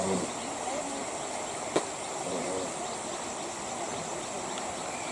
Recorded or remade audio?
recorded